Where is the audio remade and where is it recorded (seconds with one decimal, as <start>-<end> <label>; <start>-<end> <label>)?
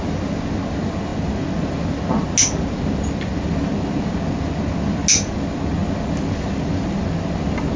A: 0.0-7.8 recorded